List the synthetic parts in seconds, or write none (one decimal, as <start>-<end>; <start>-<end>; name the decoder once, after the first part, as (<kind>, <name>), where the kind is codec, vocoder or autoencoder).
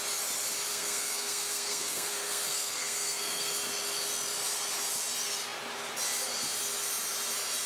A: 0.7-3.5 (codec, SNAC)